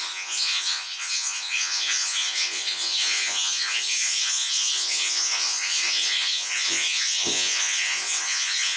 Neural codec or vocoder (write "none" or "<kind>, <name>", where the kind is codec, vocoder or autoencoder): vocoder, Vocos